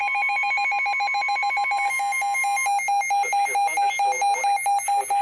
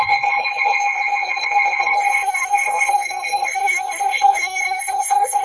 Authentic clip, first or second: first